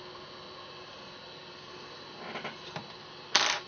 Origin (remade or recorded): recorded